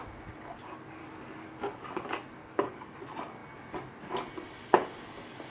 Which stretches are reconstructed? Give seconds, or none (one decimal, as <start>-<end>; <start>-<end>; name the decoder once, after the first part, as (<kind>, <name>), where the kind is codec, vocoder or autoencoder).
1.0-1.9 (codec, DAC); 2.4-3.0